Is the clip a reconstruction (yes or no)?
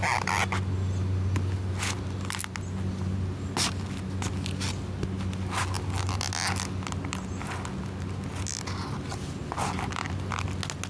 no